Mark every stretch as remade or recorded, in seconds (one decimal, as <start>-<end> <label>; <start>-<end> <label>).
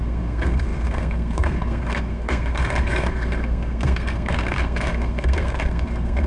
0.0-6.3 remade